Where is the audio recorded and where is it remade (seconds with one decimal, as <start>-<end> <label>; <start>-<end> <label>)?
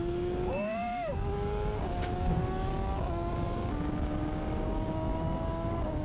0.0-6.0 remade